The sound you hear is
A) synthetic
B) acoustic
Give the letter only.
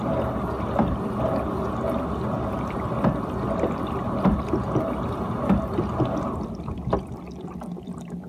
B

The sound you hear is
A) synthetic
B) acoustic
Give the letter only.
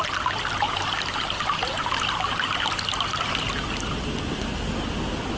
B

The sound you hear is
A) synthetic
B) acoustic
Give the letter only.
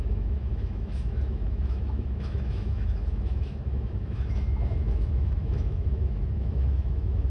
A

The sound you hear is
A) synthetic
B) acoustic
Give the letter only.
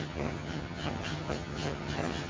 A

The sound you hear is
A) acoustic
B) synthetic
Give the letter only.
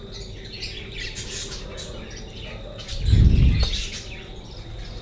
A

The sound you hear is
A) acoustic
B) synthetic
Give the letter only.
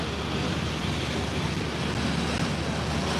A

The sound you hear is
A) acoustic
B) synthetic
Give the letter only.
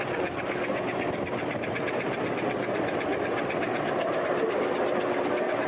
A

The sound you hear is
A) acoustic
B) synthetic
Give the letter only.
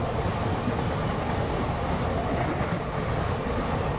A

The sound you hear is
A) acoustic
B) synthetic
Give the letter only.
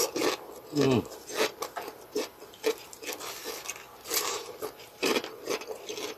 B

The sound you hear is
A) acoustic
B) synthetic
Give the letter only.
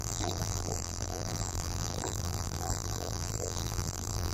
B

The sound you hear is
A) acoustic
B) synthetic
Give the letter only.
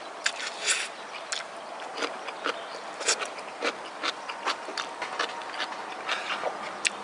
A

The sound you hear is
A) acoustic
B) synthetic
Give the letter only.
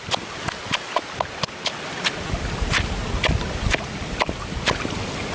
A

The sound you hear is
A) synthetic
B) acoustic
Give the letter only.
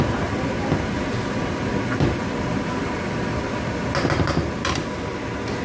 B